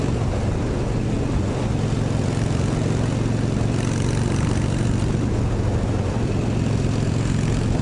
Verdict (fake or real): real